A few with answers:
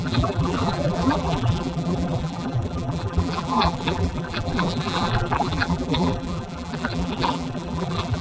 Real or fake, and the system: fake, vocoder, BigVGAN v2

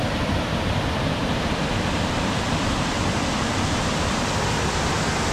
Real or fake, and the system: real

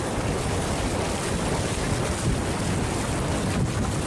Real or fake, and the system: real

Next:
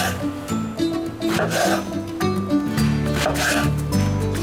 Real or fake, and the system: real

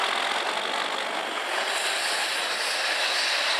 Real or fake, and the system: real